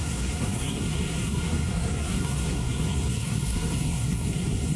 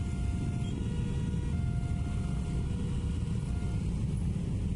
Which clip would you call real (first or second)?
second